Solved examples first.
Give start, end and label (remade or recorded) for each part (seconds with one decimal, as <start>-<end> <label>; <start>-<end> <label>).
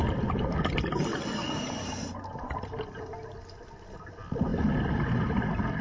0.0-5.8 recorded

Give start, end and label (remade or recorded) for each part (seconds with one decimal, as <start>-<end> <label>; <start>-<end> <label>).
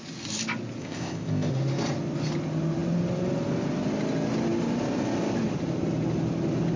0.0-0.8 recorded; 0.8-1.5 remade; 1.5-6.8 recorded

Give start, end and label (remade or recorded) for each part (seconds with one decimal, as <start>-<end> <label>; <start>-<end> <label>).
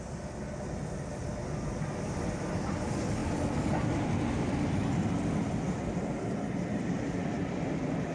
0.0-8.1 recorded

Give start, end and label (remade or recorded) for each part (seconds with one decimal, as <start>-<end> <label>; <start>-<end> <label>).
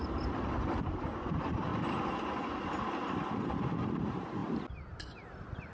0.0-1.7 remade; 1.7-3.8 recorded; 3.8-4.4 remade; 4.4-5.7 recorded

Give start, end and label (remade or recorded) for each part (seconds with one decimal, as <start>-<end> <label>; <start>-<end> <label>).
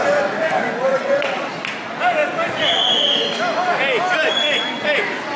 0.0-0.9 recorded; 0.9-1.5 remade; 1.5-5.4 recorded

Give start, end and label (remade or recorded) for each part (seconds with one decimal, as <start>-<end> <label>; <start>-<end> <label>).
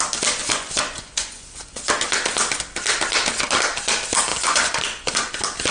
0.0-0.4 recorded; 0.4-1.9 remade; 1.9-4.3 recorded; 4.3-5.3 remade; 5.3-5.7 recorded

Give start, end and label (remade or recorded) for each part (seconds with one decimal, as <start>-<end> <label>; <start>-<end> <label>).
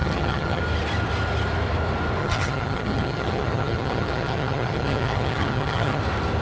0.0-0.6 remade; 0.6-2.2 recorded; 2.2-6.0 remade; 6.0-6.4 recorded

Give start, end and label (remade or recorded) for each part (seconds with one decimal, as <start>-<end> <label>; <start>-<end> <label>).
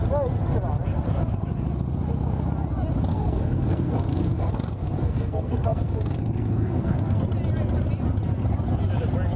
0.0-3.1 recorded; 3.1-7.2 remade; 7.2-9.4 recorded